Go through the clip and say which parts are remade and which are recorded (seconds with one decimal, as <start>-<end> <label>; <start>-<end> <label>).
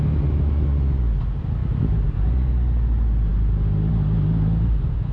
0.0-5.1 recorded